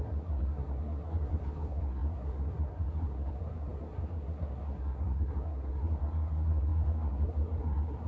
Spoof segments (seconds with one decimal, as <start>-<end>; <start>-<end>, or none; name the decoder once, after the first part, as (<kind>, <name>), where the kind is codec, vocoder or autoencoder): 0.0-8.1 (codec, SNAC)